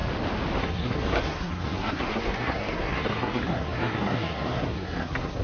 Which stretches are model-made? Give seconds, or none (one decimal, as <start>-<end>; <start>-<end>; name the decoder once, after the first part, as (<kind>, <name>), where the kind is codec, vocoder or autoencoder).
0.6-5.4 (codec, SNAC)